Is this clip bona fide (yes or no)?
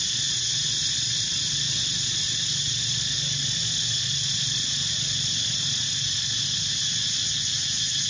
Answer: yes